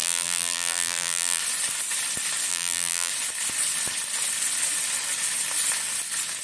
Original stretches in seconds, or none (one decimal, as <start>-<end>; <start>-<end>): 1.4-2.5; 3.1-6.4